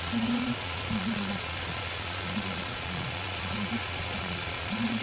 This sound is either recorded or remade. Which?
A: remade